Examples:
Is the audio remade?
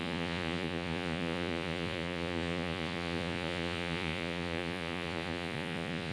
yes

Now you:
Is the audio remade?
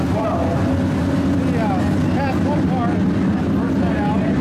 no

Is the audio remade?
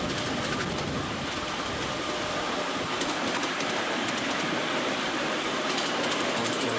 no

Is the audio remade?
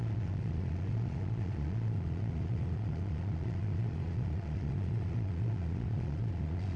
yes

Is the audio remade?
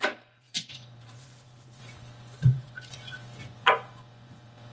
yes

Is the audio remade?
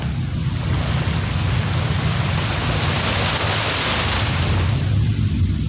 no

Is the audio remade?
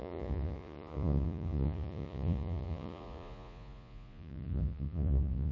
yes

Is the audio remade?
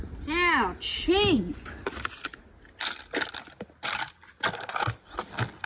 no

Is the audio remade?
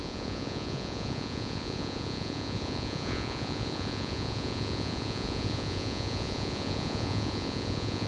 yes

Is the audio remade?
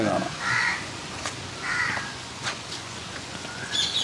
yes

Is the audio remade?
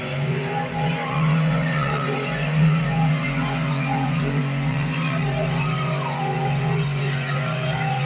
yes